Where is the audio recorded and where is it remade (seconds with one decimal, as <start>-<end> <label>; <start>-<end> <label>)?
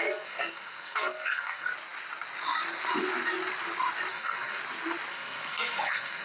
0.0-1.7 remade; 1.7-4.1 recorded; 4.1-4.6 remade; 4.6-5.1 recorded; 5.1-6.2 remade